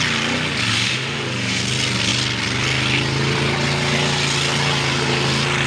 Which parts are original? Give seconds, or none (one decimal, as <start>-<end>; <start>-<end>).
0.0-0.7; 1.6-5.7